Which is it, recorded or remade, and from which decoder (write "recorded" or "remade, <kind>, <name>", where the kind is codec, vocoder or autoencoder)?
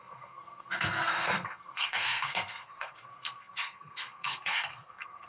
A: remade, codec, SNAC